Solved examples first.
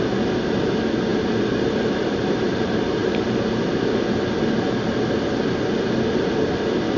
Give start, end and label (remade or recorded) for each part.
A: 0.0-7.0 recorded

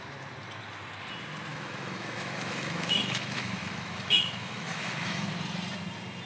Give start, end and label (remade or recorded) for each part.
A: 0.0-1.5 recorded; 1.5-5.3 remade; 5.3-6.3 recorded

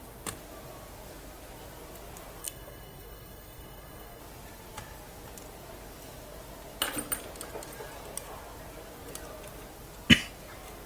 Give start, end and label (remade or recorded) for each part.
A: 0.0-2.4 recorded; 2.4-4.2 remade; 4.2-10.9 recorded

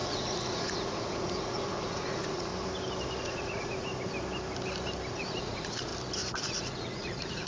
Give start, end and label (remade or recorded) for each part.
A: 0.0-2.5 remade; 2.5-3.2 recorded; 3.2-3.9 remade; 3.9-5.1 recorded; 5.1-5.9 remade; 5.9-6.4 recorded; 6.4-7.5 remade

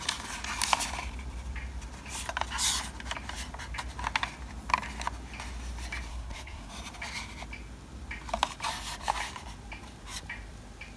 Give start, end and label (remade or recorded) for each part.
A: 0.0-6.1 recorded; 6.1-6.7 remade; 6.7-11.0 recorded